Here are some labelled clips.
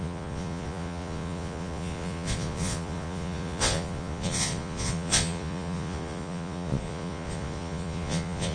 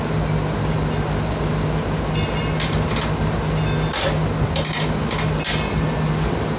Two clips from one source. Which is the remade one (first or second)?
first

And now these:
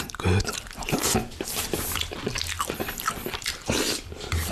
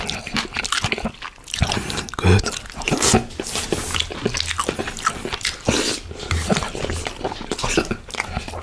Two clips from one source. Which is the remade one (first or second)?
first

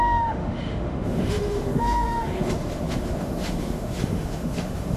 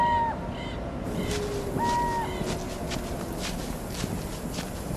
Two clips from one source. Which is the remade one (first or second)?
first